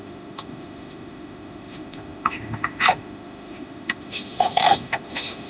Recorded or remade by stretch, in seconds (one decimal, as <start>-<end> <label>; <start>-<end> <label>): 0.0-5.5 remade